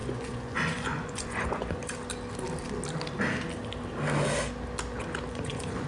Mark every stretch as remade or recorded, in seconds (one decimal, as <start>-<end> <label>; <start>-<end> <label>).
0.0-1.8 remade; 1.8-5.3 recorded; 5.3-5.9 remade

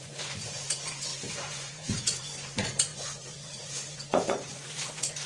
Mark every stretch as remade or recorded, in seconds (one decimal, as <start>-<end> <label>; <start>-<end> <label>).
0.0-5.3 remade

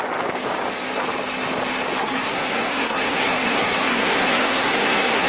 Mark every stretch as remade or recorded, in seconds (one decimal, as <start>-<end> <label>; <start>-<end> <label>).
0.0-2.0 recorded; 2.0-5.3 remade

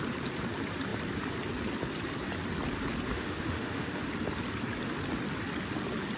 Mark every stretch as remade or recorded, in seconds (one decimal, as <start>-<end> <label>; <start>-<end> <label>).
0.0-3.1 recorded; 3.1-4.0 remade; 4.0-6.2 recorded

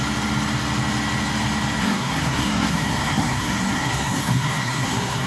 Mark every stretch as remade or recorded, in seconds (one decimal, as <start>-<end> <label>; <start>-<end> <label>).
0.0-1.8 recorded; 1.8-5.3 remade